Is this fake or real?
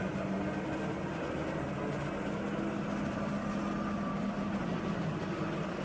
real